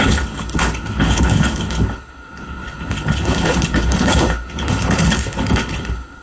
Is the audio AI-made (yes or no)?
yes